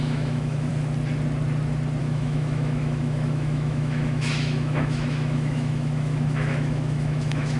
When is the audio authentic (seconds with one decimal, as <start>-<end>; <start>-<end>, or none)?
0.7-2.0